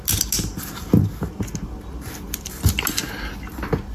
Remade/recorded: recorded